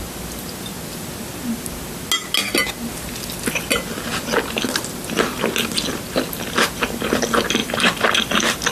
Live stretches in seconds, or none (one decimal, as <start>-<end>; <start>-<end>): 0.0-8.7